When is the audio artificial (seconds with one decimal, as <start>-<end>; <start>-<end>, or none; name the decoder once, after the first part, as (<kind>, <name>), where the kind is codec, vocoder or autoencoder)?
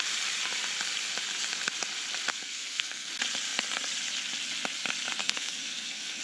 2.3-3.1 (codec, SNAC); 5.2-6.2